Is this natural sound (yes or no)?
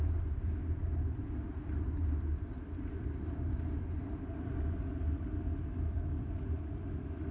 yes